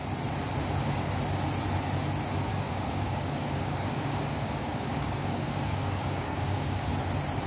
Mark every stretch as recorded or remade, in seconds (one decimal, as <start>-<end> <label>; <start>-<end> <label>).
0.0-2.5 recorded; 2.5-6.9 remade; 6.9-7.5 recorded